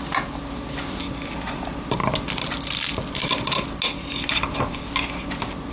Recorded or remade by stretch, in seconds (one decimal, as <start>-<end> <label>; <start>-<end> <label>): 0.0-5.7 recorded